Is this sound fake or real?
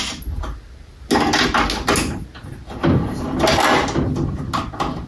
real